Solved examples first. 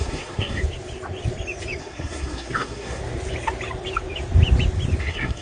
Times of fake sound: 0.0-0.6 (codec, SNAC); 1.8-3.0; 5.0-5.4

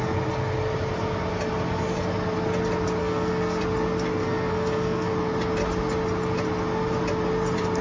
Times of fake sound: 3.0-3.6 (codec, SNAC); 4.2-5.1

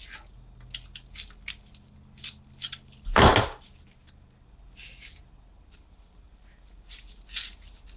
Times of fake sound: none

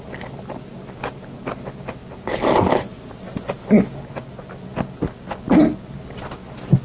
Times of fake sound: none

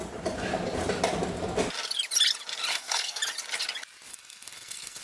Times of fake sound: 2.7-3.2 (codec, SNAC); 4.1-5.0

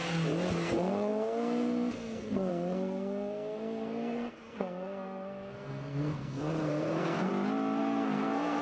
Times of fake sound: 0.5-7.3 (codec, SNAC); 7.8-8.6

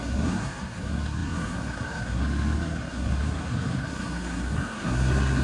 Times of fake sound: 0.0-5.4 (codec, SNAC)